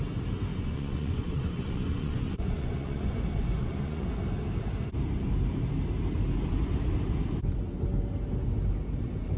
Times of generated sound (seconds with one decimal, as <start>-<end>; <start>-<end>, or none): 0.5-4.2